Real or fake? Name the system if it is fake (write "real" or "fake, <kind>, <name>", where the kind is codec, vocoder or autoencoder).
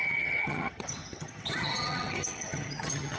fake, vocoder, HiFi-GAN